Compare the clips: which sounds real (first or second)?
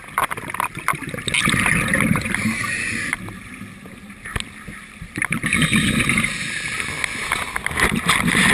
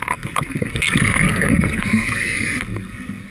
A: first